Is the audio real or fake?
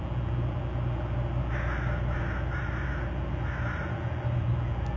real